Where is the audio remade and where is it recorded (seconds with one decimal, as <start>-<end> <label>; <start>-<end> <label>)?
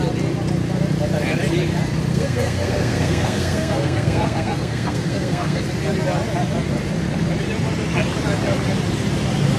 0.0-2.1 recorded; 2.1-5.6 remade; 5.6-9.6 recorded